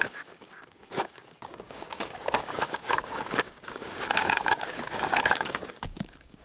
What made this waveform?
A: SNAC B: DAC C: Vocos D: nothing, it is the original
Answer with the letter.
B